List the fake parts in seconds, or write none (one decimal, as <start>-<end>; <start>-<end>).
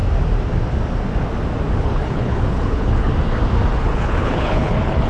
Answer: 1.8-3.1; 3.7-5.1